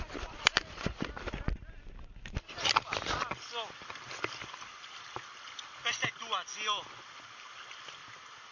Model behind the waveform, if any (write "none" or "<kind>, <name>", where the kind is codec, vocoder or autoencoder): none